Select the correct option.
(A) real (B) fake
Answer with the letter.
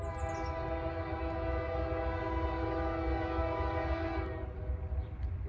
A